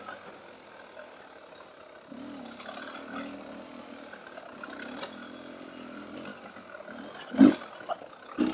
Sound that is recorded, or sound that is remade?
recorded